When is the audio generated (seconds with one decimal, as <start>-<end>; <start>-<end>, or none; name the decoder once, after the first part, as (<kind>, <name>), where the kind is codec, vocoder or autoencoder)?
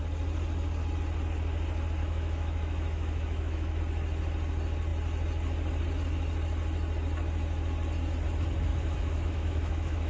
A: 2.0-3.8 (autoencoder, DAC-VAE); 8.7-10.1